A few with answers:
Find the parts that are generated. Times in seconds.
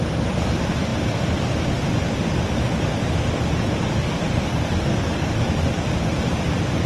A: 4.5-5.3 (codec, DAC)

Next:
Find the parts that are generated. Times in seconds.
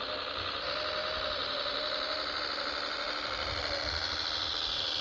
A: none